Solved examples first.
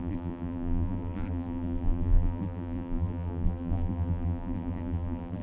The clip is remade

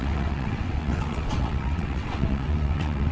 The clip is remade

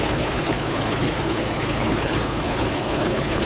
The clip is remade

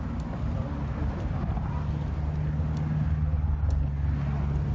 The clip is recorded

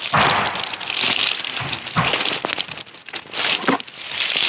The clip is recorded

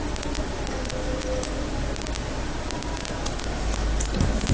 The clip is recorded